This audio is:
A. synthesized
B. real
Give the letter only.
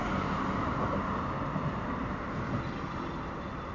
B